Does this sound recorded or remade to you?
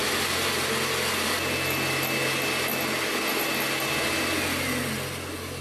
recorded